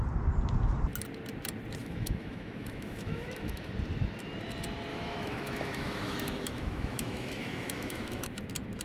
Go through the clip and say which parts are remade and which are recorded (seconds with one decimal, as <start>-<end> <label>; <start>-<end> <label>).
0.0-1.8 recorded; 1.8-3.7 remade; 3.7-4.9 recorded; 4.9-8.4 remade; 8.4-8.8 recorded